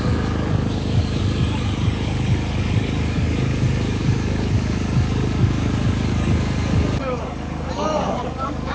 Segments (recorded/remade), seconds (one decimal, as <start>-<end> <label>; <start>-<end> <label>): 0.0-8.7 remade